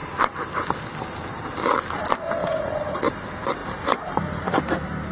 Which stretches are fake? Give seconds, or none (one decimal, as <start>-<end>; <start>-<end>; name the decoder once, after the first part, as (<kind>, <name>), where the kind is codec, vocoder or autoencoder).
2.4-3.0 (vocoder, Vocos); 3.6-4.6